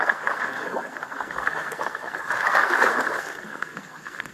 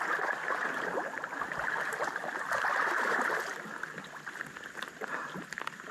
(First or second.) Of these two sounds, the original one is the second